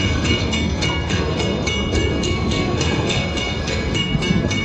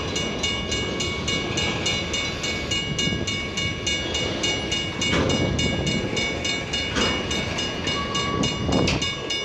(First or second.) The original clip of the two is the second